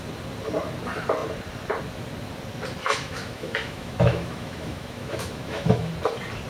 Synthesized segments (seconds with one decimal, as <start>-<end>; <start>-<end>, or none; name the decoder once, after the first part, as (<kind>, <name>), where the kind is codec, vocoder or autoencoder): 2.8-5.9 (autoencoder, DAC-VAE)